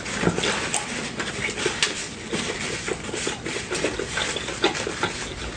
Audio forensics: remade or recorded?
recorded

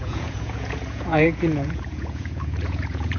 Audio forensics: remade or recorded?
remade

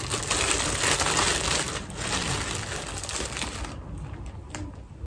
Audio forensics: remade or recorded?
recorded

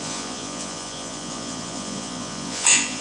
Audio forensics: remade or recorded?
remade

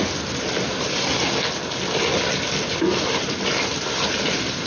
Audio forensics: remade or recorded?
recorded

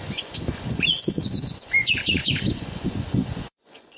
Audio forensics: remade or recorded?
remade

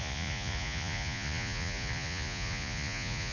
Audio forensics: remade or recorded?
remade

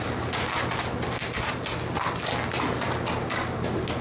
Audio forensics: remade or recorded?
recorded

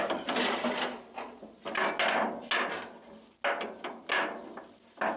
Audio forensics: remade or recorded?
recorded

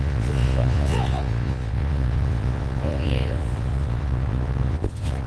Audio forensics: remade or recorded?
remade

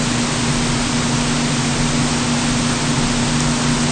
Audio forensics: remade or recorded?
recorded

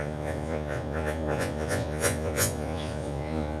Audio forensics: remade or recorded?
remade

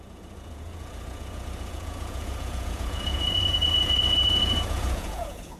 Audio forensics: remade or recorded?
remade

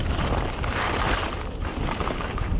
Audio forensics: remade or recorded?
recorded